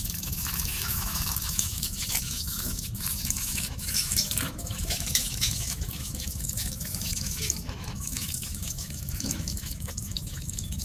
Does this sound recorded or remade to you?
remade